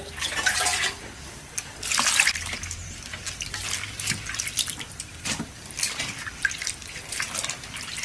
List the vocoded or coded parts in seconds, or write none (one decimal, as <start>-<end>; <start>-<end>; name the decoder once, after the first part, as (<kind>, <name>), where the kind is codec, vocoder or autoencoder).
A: 0.7-3.2 (vocoder, BigVGAN v2)